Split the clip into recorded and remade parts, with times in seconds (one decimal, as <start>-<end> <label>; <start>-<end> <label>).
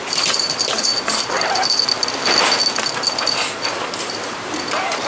0.0-0.9 remade; 0.9-4.0 recorded; 4.0-5.1 remade